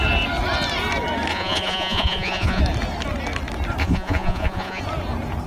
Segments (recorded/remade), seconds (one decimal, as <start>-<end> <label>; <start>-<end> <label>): 0.0-1.3 recorded; 1.3-2.6 remade; 2.6-3.8 recorded; 3.8-4.8 remade; 4.8-5.5 recorded